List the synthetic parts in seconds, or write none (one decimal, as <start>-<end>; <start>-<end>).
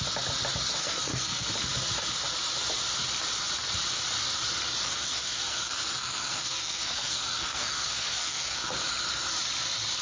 0.8-1.5; 4.9-8.7